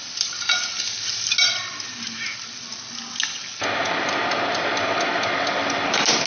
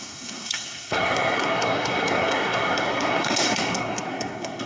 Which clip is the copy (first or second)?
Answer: second